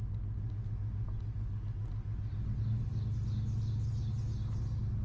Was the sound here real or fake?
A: real